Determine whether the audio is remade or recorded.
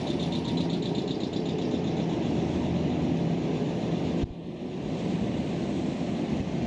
recorded